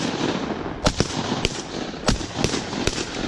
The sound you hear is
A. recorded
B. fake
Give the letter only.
A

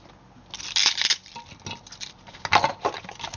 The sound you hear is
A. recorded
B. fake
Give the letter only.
A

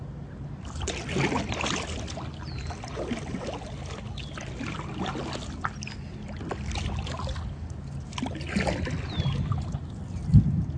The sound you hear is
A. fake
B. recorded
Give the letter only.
B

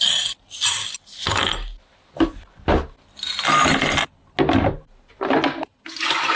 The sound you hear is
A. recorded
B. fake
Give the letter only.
A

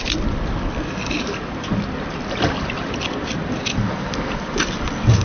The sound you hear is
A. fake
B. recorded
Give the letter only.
B